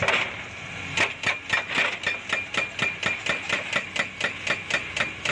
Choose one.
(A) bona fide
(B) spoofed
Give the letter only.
A